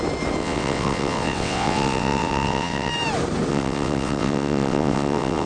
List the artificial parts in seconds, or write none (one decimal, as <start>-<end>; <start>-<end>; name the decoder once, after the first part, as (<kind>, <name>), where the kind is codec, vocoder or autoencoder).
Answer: 0.4-2.9 (vocoder, WaveNeXt); 3.5-5.5